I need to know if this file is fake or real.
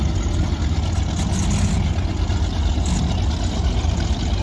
real